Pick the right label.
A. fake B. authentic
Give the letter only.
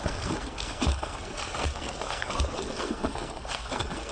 A